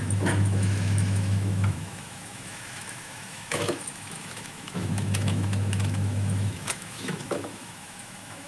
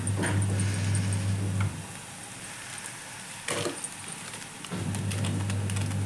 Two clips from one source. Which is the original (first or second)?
second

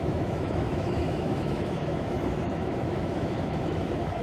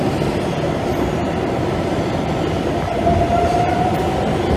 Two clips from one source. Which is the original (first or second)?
second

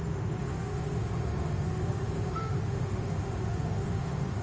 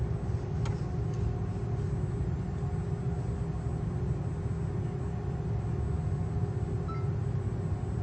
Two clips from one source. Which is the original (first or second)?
second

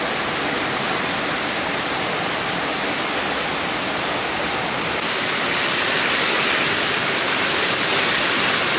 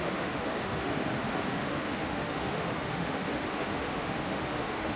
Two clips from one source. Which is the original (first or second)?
first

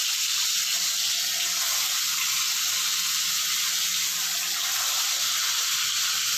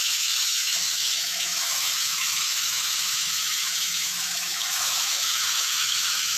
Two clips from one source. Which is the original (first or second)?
first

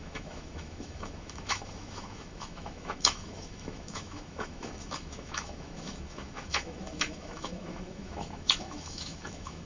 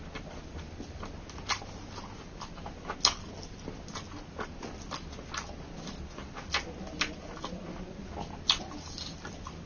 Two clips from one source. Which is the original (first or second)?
second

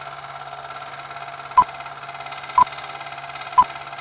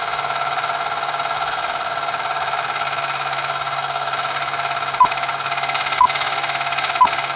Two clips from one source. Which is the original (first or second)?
first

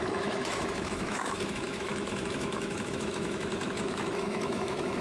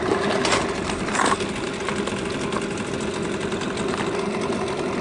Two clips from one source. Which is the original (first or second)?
second